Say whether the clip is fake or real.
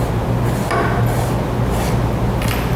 real